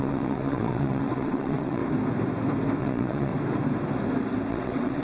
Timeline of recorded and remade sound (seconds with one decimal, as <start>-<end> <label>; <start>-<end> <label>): 0.0-1.8 remade; 1.8-2.8 recorded; 2.8-3.3 remade; 3.3-4.5 recorded; 4.5-5.0 remade